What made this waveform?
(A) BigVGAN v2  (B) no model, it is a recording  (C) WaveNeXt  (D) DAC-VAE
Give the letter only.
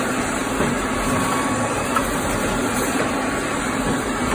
A